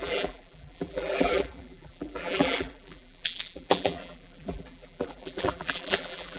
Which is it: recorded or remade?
remade